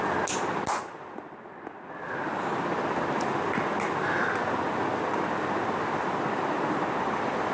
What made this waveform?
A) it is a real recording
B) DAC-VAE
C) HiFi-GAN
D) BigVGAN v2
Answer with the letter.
A